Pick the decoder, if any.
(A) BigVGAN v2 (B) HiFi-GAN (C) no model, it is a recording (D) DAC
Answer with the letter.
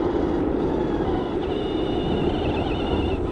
C